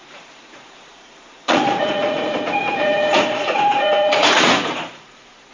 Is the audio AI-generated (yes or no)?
yes